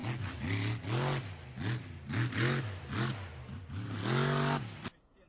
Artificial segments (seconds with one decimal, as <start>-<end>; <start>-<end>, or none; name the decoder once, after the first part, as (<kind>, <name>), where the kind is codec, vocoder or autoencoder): none